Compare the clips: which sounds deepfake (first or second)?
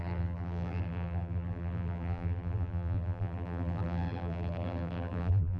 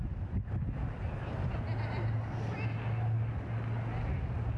first